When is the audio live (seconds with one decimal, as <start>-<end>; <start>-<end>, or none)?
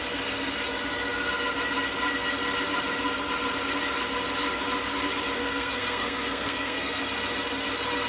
0.0-5.4; 7.0-8.1